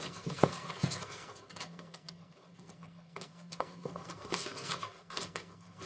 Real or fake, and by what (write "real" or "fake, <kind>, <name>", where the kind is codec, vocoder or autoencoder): fake, codec, SNAC